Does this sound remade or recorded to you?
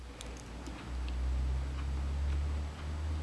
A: recorded